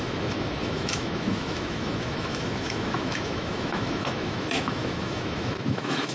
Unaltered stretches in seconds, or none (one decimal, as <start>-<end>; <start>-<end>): none